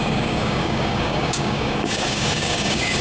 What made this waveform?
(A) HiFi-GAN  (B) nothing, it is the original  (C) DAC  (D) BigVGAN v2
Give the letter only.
C